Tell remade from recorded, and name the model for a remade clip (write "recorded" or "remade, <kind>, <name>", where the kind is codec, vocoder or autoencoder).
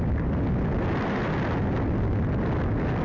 recorded